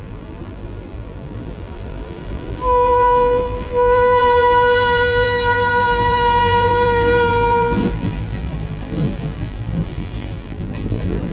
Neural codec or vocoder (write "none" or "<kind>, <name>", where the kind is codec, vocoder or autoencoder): vocoder, BigVGAN v2